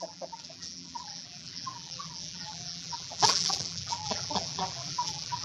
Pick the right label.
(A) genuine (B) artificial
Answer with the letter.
B